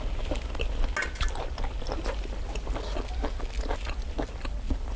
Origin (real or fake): real